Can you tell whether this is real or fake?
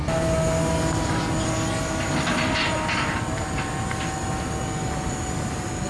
real